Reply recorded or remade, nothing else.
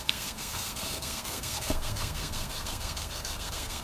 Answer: remade